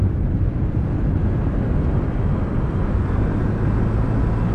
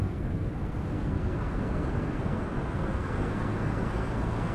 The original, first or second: first